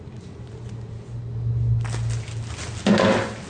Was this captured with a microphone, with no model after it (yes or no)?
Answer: yes